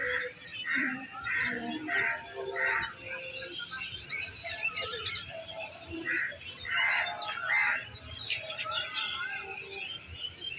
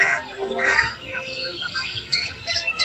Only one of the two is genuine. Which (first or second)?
first